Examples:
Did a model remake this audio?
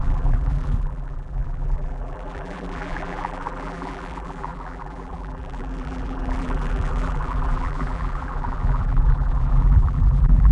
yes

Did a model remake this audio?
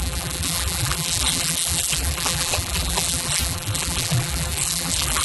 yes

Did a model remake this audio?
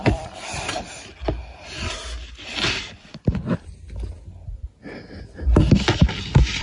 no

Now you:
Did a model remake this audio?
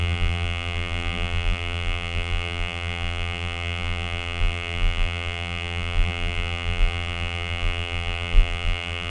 yes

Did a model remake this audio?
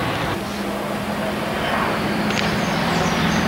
yes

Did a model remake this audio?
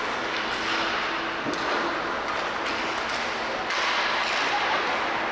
no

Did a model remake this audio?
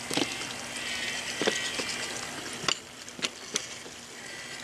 no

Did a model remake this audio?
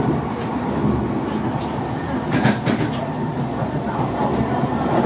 yes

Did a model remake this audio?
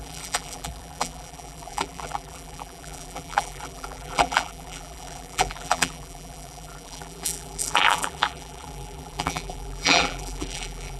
yes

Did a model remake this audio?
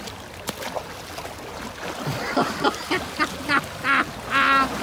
no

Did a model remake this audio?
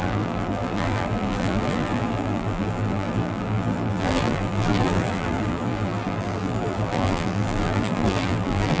yes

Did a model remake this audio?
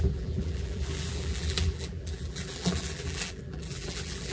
yes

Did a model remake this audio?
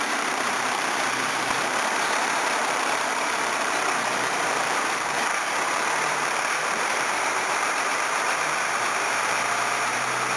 yes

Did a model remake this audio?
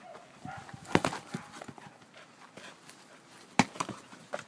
no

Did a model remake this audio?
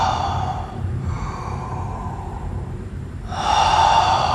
yes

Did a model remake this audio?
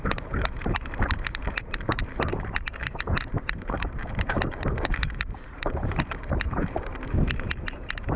yes